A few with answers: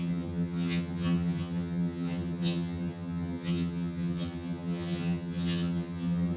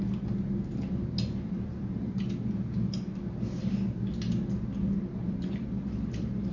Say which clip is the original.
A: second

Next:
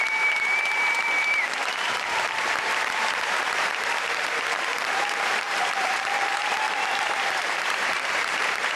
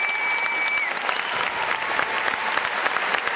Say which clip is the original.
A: second